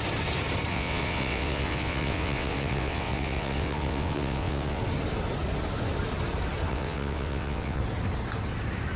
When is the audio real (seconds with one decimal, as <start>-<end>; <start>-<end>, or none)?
0.0-0.7; 4.8-6.7; 7.8-9.0